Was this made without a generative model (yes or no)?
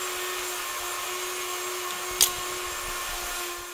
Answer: yes